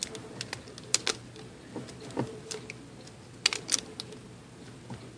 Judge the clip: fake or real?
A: real